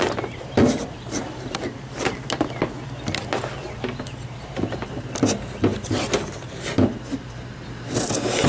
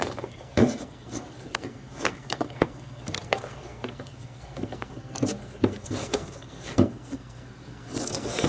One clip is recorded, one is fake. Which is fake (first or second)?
second